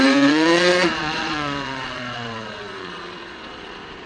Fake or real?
fake